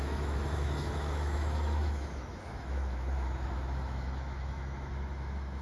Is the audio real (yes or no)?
no